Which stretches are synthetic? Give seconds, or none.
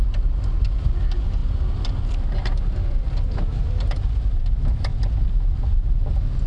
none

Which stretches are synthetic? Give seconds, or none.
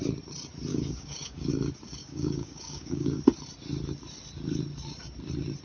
0.7-1.5 (codec, DAC); 2.0-3.2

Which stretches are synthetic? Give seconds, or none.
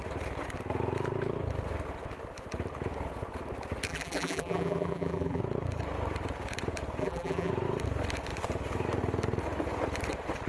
3.9-5.4 (vocoder, BigVGAN v2); 7.0-7.5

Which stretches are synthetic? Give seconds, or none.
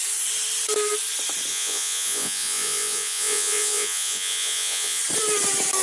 1.5-5.0 (vocoder, Vocos)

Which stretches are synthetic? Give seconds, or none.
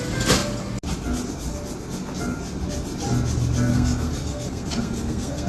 3.7-5.5 (codec, SNAC)